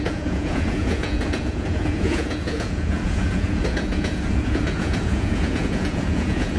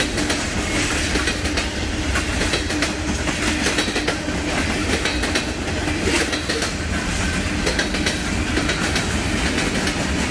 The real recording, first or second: second